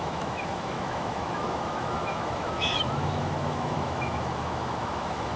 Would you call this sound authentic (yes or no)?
no